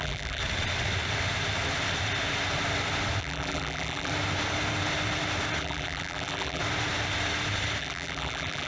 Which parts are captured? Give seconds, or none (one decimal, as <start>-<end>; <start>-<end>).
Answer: 0.4-3.2; 4.1-5.6; 6.6-7.8